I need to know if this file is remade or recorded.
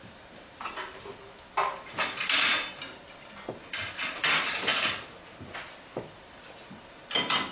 recorded